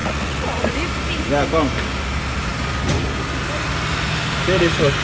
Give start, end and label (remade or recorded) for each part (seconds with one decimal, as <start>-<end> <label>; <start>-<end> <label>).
0.0-0.7 remade; 0.7-5.0 recorded